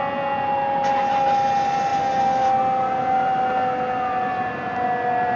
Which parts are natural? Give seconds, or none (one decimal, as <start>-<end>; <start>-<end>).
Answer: 0.0-5.4